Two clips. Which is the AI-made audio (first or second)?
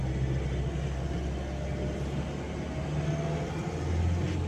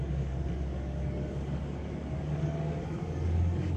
second